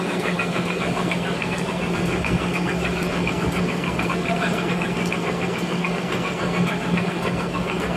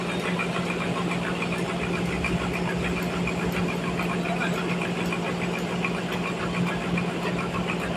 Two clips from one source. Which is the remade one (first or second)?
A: first